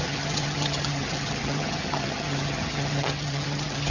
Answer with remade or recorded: remade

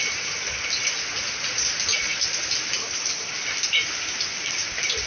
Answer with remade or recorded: recorded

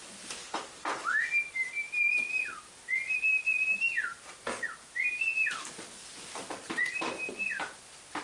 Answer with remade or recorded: recorded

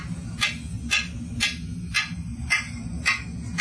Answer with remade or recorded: recorded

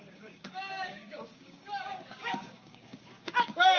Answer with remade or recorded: remade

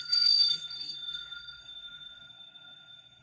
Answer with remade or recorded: remade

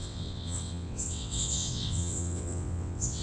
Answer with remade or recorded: remade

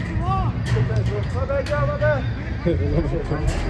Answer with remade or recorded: recorded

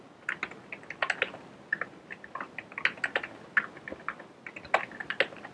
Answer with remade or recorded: recorded